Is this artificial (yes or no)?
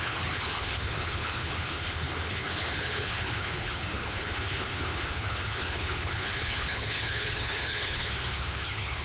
yes